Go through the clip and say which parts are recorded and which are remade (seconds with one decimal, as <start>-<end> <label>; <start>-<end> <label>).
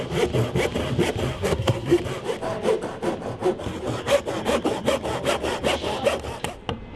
0.0-1.3 recorded; 1.3-2.0 remade; 2.0-7.0 recorded